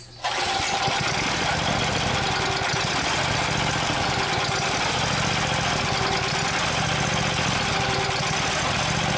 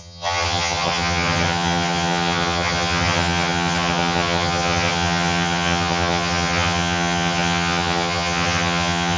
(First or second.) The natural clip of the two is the first